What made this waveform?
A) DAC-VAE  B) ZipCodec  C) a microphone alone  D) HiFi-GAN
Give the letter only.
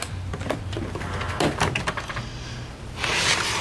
C